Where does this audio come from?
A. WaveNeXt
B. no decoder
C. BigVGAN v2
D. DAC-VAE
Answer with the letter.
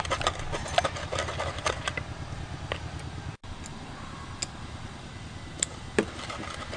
B